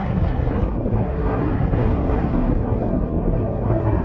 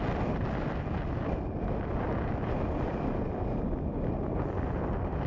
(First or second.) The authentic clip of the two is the second